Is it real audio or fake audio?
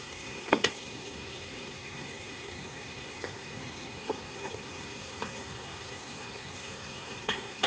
fake